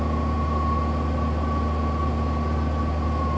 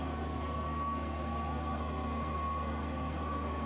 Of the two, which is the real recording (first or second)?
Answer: first